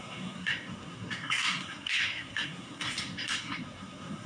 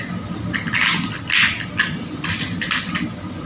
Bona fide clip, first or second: second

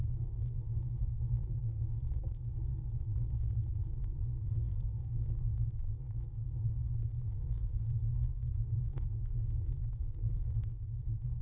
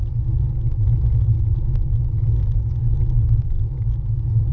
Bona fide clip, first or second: second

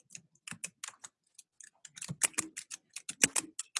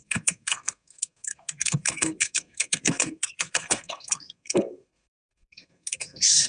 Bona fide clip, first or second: first